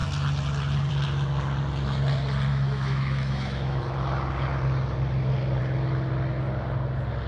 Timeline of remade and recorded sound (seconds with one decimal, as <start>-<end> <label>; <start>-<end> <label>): 0.0-2.5 recorded; 2.5-3.8 remade; 3.8-7.3 recorded